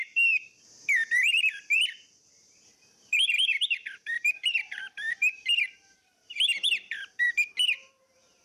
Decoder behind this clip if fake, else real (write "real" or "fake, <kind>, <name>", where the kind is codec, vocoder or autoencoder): fake, vocoder, BigVGAN v2